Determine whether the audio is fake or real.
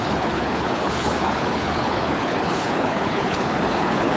fake